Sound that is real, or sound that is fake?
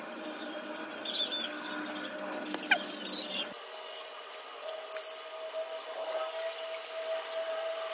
real